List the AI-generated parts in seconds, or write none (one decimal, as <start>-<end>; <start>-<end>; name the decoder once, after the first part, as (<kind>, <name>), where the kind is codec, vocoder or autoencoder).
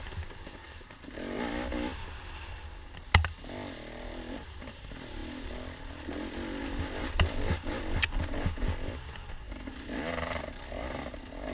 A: none